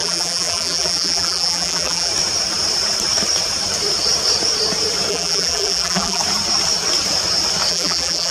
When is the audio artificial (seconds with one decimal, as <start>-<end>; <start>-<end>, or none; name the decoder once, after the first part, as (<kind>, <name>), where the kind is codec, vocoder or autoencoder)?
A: 0.0-2.1 (vocoder, BigVGAN v2); 5.1-6.2; 7.7-8.3